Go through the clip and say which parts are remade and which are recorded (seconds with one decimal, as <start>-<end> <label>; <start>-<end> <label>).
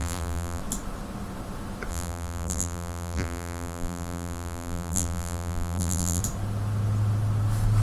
0.0-0.6 remade; 0.6-1.9 recorded; 1.9-6.2 remade; 6.2-7.8 recorded